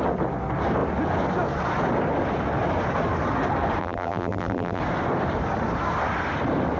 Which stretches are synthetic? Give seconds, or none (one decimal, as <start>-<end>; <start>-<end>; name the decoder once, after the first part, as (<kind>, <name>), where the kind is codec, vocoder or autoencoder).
3.8-4.8 (vocoder, BigVGAN v2)